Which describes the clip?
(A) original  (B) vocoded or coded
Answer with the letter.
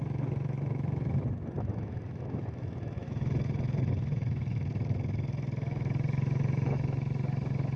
B